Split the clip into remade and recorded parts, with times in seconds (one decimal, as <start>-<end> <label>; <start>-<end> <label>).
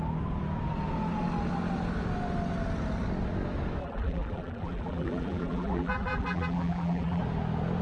0.0-3.8 recorded; 3.8-7.2 remade; 7.2-7.8 recorded